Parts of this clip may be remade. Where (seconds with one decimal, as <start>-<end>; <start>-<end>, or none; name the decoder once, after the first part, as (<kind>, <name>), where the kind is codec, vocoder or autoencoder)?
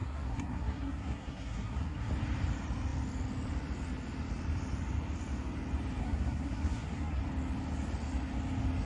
0.0-2.1 (codec, SNAC); 6.0-7.2